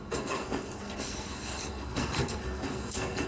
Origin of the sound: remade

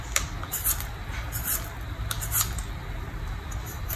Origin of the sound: remade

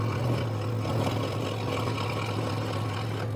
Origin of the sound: recorded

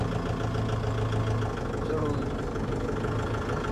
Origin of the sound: recorded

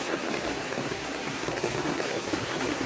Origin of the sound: remade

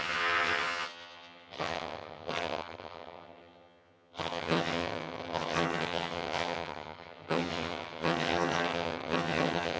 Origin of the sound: remade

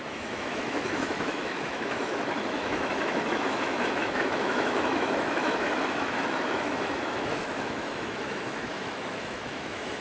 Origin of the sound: remade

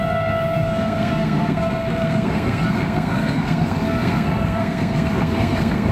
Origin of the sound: remade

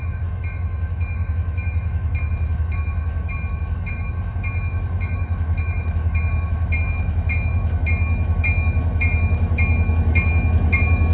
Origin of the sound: remade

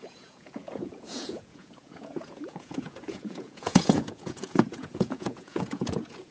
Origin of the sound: remade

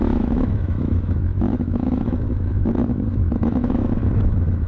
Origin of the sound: remade